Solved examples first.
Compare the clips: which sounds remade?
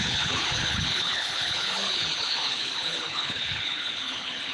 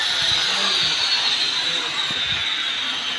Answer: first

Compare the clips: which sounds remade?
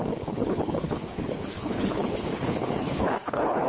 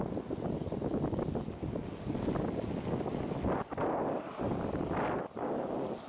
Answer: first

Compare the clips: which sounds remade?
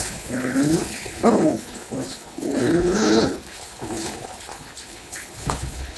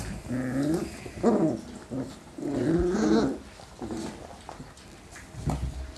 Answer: first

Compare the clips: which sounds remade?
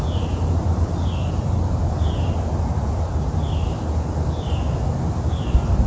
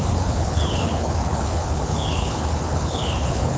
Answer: second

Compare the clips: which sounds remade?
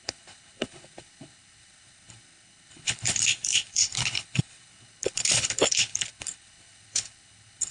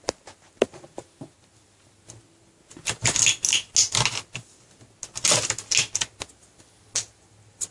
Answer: first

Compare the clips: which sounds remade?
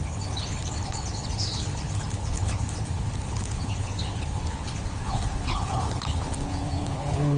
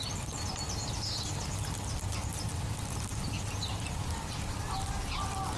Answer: first